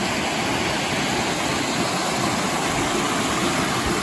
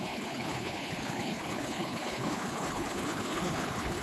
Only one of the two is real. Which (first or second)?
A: first